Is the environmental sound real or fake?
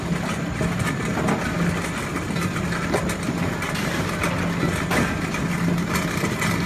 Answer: real